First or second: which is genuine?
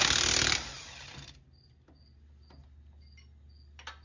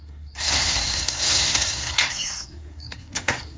first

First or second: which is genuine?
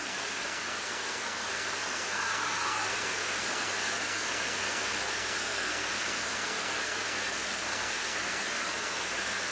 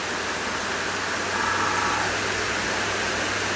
second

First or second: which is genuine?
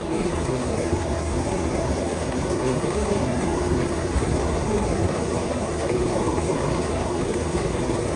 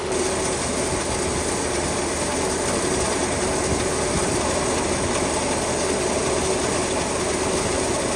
second